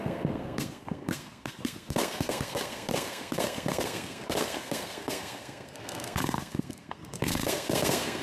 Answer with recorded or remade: remade